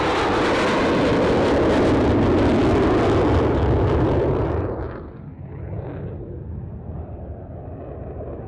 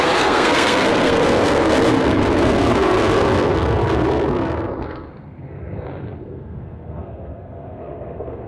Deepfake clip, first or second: second